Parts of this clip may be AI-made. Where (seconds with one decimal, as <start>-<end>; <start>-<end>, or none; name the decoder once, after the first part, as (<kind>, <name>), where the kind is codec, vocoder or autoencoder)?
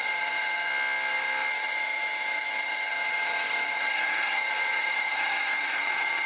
0.0-0.7 (vocoder, HiFi-GAN); 1.5-6.3